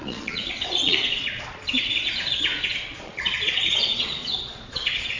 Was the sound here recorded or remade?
remade